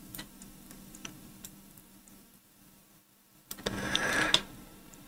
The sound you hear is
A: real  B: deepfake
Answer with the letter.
A